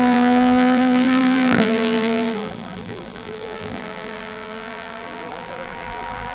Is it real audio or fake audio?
fake